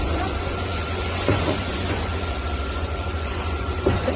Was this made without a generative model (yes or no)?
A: no